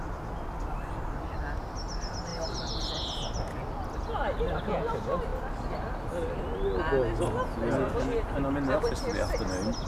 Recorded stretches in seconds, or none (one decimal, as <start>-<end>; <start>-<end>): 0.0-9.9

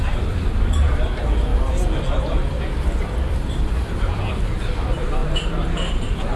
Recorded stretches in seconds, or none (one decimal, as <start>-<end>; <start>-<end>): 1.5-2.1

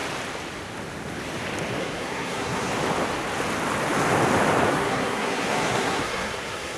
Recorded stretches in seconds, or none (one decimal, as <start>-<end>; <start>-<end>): 0.0-1.8; 2.7-4.7

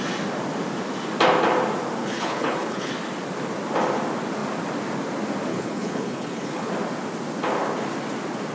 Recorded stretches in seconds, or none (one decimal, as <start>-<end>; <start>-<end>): 0.0-2.0; 2.9-5.5; 6.7-8.5

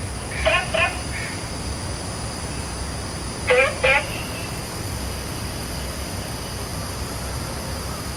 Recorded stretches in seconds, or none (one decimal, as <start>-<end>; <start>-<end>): 0.0-3.6; 5.5-8.2